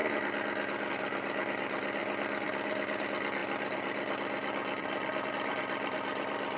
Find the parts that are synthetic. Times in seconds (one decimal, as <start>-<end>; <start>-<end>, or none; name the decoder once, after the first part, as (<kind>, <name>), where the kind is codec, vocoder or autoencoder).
0.9-2.0 (vocoder, BigVGAN v2); 3.0-6.6